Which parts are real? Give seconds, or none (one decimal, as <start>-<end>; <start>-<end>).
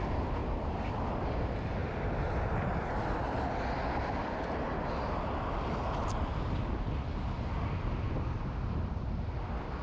0.0-0.4; 1.0-9.8